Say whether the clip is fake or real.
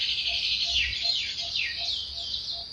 real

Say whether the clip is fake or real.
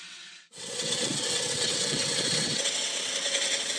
fake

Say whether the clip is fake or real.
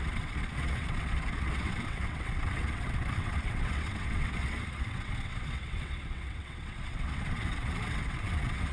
fake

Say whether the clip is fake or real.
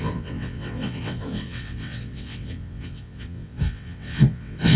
fake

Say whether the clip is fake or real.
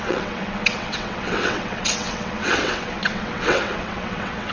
fake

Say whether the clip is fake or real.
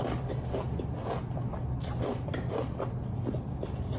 real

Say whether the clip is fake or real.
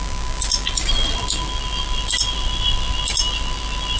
real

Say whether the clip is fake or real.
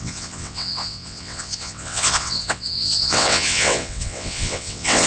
fake